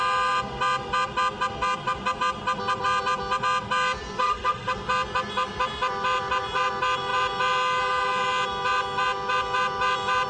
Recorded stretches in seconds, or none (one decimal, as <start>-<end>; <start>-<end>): 0.0-4.2; 4.7-10.3